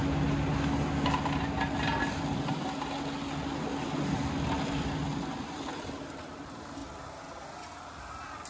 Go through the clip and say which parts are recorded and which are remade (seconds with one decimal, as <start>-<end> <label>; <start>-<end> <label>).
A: 0.0-8.5 recorded